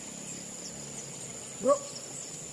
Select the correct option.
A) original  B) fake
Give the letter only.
A